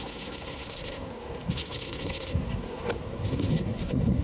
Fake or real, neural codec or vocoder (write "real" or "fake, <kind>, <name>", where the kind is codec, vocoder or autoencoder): fake, codec, SNAC